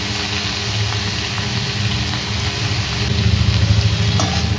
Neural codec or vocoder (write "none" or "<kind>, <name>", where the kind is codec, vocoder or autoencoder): none